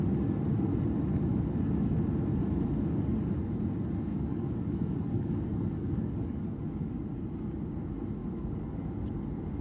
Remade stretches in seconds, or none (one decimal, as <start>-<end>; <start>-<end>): 1.3-1.9; 4.1-6.9; 8.2-8.9